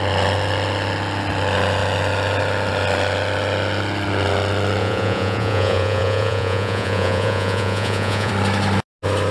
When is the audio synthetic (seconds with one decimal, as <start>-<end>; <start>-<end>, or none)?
4.8-8.3

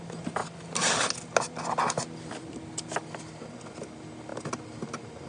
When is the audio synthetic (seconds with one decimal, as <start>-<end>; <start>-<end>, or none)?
none

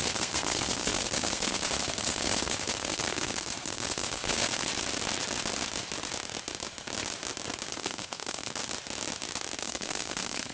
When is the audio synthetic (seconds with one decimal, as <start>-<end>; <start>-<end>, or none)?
0.0-4.7; 7.7-8.6; 9.6-10.5

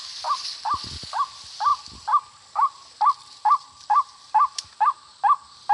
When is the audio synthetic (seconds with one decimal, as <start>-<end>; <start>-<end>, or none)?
0.0-0.6

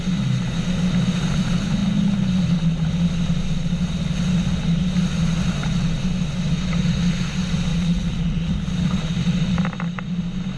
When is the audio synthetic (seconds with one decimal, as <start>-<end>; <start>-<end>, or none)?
7.7-8.5

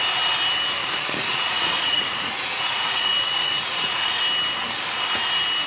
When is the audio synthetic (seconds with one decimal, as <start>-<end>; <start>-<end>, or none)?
0.8-4.2